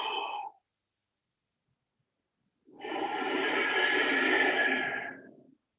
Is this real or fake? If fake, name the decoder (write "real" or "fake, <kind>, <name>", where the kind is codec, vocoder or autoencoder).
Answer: real